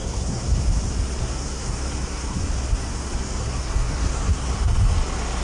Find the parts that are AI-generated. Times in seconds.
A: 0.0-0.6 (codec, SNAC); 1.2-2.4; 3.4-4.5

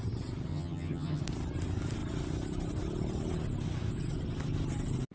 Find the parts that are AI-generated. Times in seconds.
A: 0.5-1.2 (vocoder, HiFi-GAN)

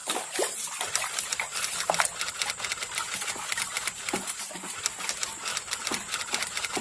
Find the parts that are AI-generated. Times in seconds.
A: 5.5-6.8 (vocoder, BigVGAN v2)

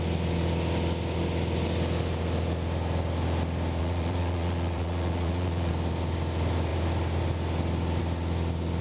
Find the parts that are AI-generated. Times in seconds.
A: 3.8-5.7 (vocoder, Vocos)

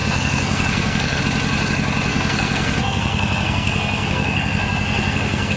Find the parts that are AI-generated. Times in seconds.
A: 0.0-1.2 (codec, SNAC); 2.1-5.6

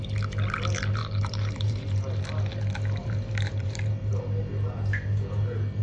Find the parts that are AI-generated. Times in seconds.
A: 1.0-2.2 (vocoder, BigVGAN v2); 3.0-4.2

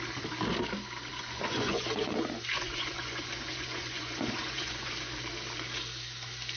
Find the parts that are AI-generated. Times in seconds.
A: 1.1-4.9 (vocoder, Vocos)